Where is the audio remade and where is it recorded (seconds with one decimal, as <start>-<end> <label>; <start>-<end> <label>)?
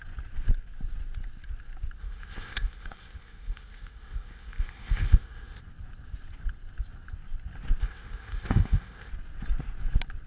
0.0-2.0 recorded; 2.0-5.6 remade; 5.6-7.8 recorded; 7.8-9.1 remade; 9.1-10.3 recorded